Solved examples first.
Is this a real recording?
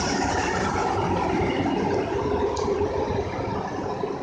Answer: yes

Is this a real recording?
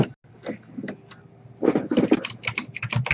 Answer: yes